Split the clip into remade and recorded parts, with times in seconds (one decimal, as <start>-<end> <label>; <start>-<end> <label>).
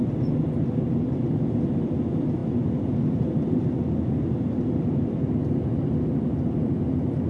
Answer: 0.0-7.3 recorded